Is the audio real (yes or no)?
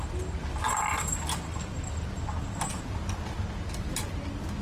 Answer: yes